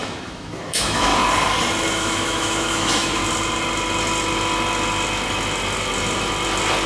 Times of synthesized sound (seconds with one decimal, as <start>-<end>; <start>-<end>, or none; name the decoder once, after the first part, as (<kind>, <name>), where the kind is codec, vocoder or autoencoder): 0.0-1.1 (autoencoder, DAC-VAE); 1.9-3.2